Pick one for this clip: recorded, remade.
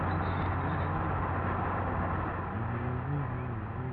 recorded